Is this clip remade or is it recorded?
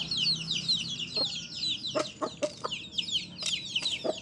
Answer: recorded